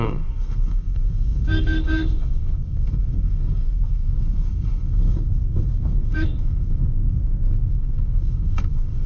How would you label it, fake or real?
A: fake